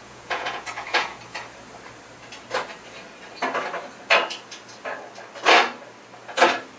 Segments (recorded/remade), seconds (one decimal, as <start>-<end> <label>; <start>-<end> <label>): 0.0-1.2 remade; 1.2-6.8 recorded